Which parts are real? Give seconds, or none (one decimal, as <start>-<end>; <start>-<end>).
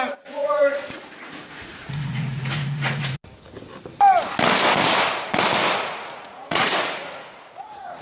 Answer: 3.2-5.7